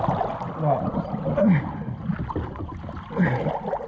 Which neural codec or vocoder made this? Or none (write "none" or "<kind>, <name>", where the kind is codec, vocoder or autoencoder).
none